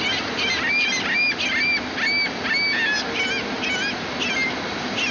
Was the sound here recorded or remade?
recorded